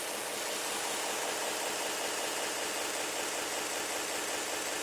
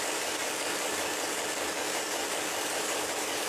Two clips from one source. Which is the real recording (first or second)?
first